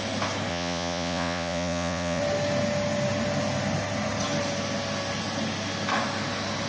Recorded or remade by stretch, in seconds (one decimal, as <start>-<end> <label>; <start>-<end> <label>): 0.0-0.5 recorded; 0.5-2.2 remade; 2.2-6.7 recorded